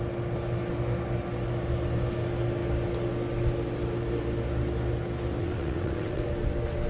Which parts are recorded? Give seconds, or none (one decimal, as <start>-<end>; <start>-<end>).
0.0-5.4; 6.3-6.9